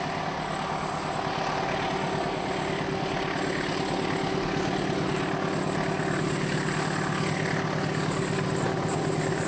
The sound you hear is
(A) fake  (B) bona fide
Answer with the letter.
B